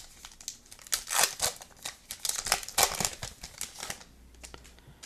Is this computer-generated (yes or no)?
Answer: no